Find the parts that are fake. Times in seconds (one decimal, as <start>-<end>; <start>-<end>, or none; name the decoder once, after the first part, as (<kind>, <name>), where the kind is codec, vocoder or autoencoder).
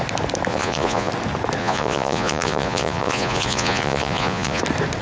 0.5-1.1 (vocoder, Vocos); 1.6-4.6